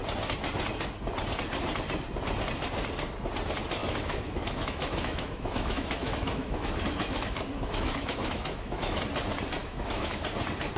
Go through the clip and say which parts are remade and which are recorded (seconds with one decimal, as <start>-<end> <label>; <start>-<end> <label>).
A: 0.0-3.8 recorded; 3.8-9.0 remade; 9.0-9.6 recorded; 9.6-10.2 remade; 10.2-10.8 recorded